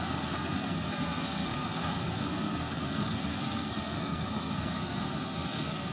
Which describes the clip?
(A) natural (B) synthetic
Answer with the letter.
B